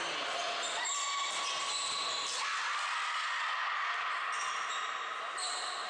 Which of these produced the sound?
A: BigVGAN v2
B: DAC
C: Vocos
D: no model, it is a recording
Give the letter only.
D